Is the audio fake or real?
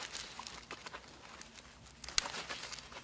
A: real